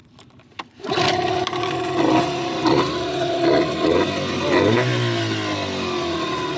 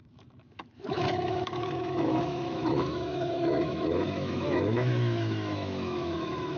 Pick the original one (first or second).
first